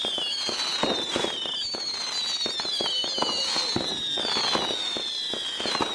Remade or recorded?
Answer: recorded